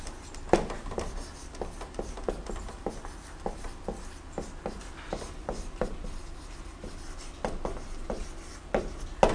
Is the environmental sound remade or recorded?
recorded